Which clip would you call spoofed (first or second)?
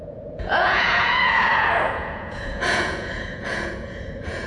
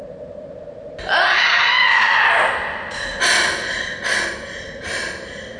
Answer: first